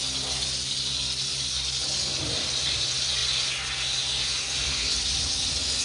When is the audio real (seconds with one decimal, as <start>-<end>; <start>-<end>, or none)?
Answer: 0.0-5.8